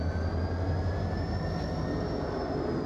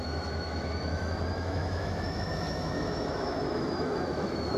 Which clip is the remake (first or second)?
second